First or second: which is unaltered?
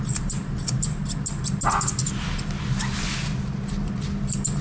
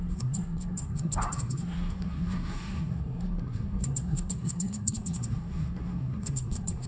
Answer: first